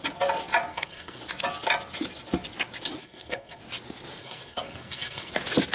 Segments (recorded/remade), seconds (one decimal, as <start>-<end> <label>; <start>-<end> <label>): 0.0-0.7 recorded; 0.7-1.2 remade; 1.2-3.0 recorded; 3.0-3.6 remade; 3.6-4.2 recorded; 4.2-5.3 remade; 5.3-5.7 recorded